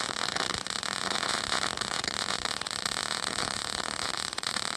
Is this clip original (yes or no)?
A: no